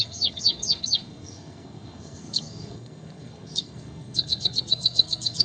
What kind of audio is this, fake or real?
fake